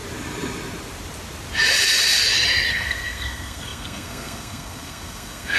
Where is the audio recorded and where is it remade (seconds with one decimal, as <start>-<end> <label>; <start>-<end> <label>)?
0.0-2.7 recorded; 2.7-5.6 remade